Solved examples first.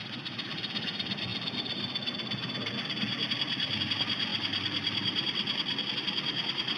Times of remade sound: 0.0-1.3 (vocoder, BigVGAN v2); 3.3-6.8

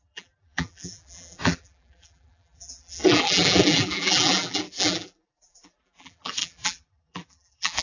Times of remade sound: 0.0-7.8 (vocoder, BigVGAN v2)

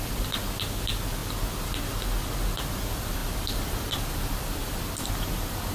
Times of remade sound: 3.2-5.1 (vocoder, BigVGAN v2)